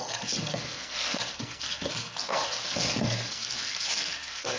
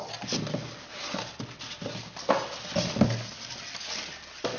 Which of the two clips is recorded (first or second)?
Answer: second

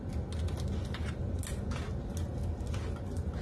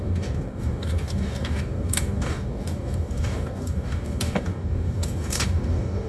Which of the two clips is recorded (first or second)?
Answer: first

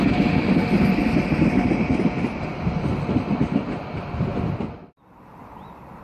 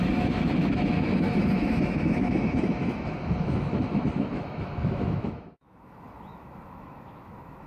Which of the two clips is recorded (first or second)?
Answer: first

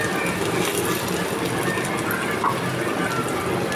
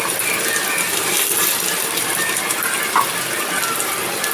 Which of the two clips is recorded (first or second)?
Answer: first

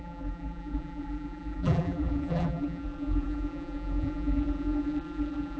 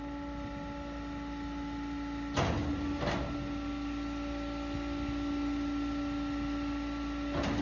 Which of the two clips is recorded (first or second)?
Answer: second